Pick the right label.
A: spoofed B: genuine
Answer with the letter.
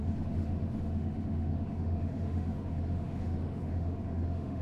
A